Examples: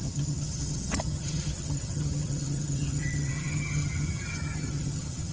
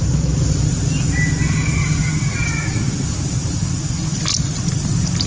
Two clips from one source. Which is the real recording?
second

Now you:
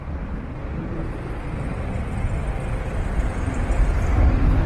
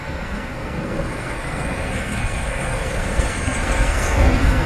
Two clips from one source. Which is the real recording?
first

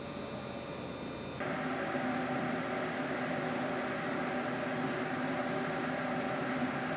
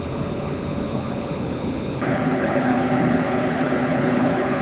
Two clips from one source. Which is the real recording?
first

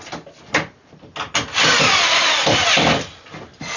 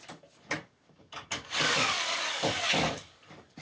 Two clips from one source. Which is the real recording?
first